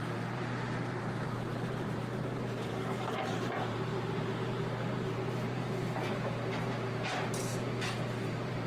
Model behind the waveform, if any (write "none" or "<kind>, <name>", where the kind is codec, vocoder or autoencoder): vocoder, BigVGAN v2